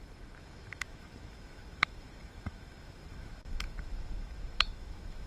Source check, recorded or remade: remade